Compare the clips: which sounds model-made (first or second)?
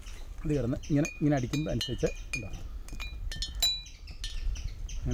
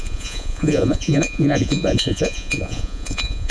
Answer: second